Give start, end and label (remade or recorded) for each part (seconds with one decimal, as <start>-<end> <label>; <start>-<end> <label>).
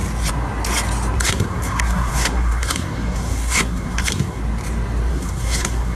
0.0-1.2 recorded; 1.2-4.4 remade; 4.4-5.1 recorded; 5.1-5.9 remade